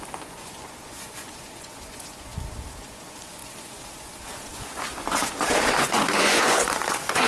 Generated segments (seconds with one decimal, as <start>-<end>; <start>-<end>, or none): 0.0-2.3; 2.9-7.3